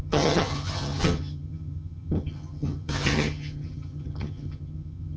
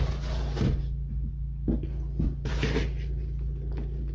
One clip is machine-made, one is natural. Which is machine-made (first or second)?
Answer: first